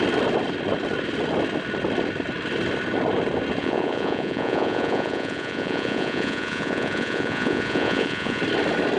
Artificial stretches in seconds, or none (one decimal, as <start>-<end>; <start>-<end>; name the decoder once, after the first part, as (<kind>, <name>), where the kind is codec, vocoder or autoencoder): 3.6-8.4 (vocoder, Vocos)